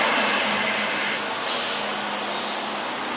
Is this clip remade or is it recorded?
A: recorded